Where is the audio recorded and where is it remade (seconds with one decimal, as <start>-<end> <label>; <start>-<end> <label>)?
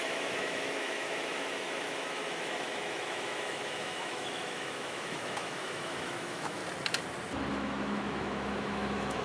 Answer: 0.0-6.6 remade; 6.6-7.5 recorded; 7.5-9.2 remade